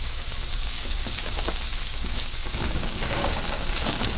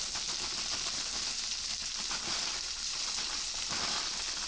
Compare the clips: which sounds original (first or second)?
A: second